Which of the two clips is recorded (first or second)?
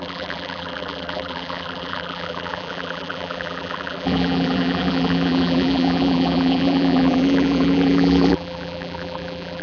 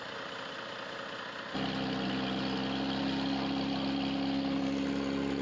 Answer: second